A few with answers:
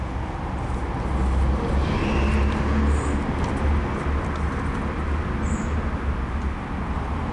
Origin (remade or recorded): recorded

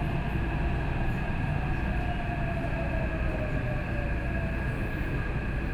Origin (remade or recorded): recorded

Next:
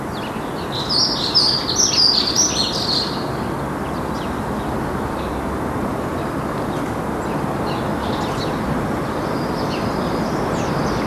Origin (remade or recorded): recorded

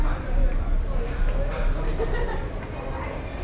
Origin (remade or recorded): recorded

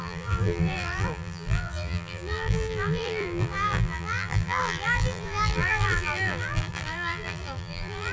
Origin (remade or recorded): remade